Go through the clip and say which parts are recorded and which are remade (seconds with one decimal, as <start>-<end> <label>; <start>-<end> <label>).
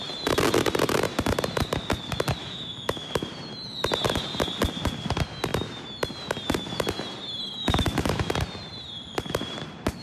0.0-2.4 recorded; 2.4-3.1 remade; 3.1-7.6 recorded; 7.6-8.3 remade; 8.3-10.0 recorded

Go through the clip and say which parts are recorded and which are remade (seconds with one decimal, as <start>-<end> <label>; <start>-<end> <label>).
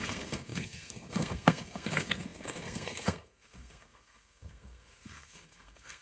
0.0-6.0 remade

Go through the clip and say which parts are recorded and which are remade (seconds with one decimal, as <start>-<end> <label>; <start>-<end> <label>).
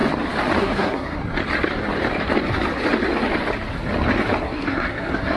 0.0-0.6 recorded; 0.6-1.2 remade; 1.2-4.4 recorded; 4.4-5.4 remade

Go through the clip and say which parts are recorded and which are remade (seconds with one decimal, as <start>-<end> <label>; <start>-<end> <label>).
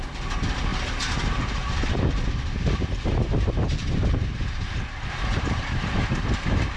0.0-0.7 recorded; 0.7-4.8 remade; 4.8-5.3 recorded; 5.3-6.8 remade